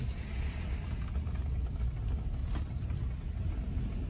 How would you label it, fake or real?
real